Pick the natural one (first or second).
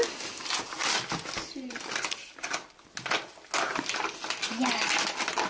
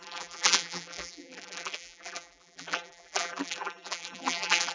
first